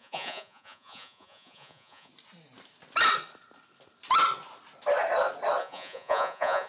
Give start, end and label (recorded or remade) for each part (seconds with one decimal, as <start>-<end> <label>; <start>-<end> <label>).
0.0-2.1 remade; 2.1-5.6 recorded; 5.6-6.7 remade